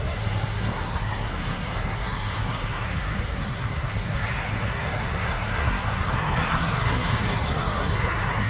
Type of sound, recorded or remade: remade